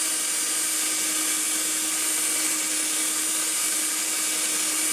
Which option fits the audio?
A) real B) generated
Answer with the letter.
A